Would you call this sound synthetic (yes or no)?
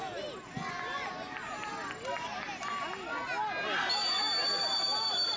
no